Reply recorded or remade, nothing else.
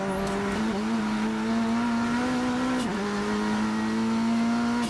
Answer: recorded